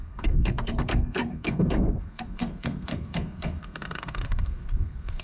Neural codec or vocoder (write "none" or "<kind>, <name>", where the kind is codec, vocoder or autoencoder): codec, SNAC